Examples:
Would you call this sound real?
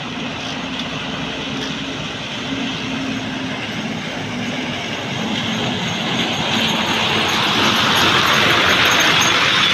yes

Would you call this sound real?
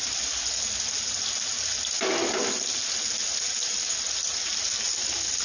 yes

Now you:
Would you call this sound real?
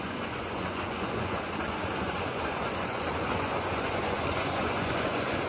no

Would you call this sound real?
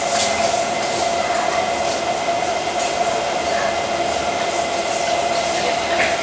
yes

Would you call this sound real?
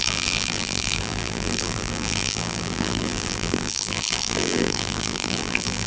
no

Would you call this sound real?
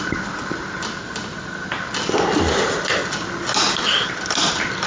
yes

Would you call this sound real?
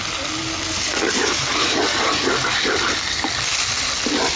yes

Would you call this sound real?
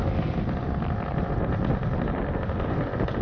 yes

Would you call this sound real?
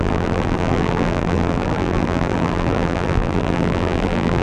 no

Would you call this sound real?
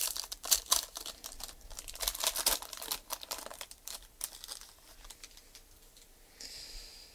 no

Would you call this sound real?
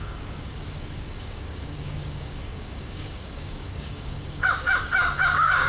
no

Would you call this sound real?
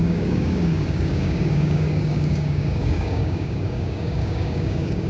no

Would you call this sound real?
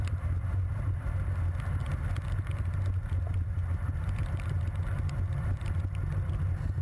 yes